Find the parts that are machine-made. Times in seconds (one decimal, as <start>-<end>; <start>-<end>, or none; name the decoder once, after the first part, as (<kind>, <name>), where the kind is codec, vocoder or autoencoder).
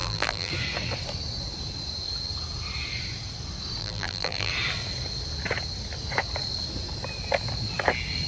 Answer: 0.0-0.5 (vocoder, BigVGAN v2); 3.8-4.5